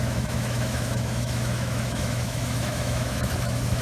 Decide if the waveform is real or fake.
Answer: fake